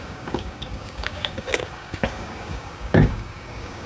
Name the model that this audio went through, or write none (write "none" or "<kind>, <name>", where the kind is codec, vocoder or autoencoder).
codec, DAC